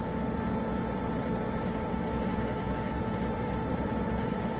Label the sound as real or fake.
fake